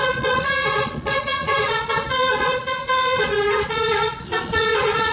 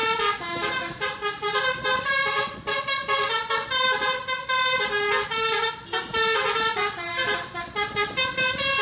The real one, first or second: second